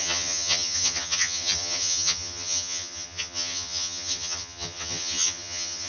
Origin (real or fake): fake